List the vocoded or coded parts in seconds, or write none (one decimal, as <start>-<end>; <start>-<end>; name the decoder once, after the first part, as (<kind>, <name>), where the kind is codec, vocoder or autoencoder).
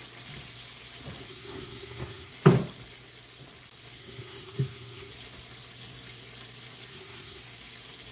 1.3-2.3 (codec, SNAC); 4.0-5.1; 6.9-7.4